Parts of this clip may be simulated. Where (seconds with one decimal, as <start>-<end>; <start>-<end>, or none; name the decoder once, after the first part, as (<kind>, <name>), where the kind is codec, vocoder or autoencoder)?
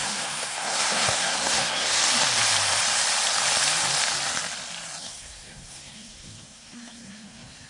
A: 0.0-2.0 (codec, SNAC); 5.0-7.7